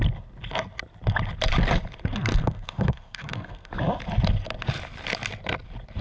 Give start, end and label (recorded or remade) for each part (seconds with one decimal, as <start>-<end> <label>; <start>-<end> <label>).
0.0-2.3 recorded; 2.3-3.7 remade; 3.7-6.0 recorded